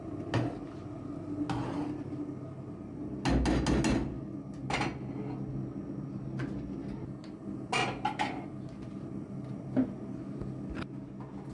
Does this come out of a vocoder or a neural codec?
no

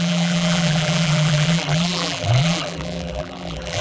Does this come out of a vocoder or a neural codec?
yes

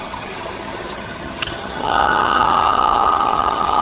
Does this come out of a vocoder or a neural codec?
yes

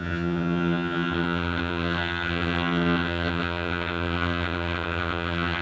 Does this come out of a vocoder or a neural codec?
yes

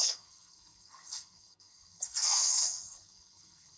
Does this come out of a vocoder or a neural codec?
yes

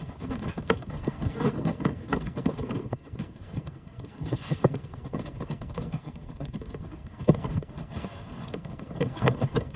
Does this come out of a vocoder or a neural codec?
yes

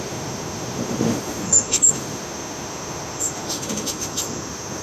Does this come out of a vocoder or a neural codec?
yes